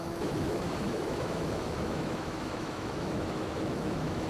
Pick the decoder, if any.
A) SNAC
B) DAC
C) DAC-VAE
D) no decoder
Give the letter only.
C